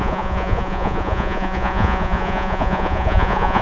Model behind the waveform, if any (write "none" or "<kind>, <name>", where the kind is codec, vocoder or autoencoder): vocoder, Vocos